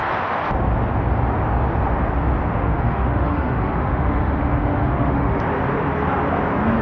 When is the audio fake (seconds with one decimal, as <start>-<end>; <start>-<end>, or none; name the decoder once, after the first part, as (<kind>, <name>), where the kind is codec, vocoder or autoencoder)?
2.5-5.4 (autoencoder, DAC-VAE)